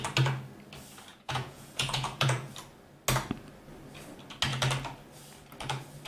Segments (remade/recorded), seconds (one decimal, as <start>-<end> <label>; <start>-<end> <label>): 0.0-1.1 recorded; 1.1-2.5 remade; 2.5-6.1 recorded